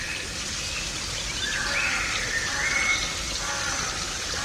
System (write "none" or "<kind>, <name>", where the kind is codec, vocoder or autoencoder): none